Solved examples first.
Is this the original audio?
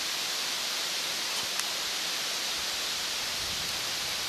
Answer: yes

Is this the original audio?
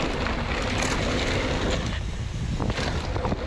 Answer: yes